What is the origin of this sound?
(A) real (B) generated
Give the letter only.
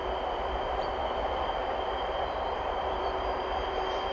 B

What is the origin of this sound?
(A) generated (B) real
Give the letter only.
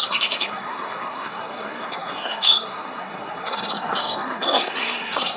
A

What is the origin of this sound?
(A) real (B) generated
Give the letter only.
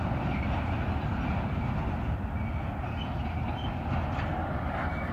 A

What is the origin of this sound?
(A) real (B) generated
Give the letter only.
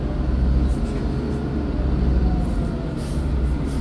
A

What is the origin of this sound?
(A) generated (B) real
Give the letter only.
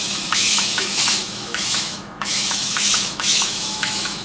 A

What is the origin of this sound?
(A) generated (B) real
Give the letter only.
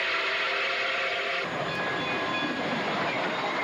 B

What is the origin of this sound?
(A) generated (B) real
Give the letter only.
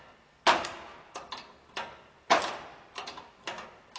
B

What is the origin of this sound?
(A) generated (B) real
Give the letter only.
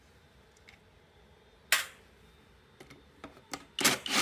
B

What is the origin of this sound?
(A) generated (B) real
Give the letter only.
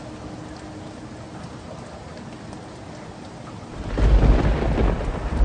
B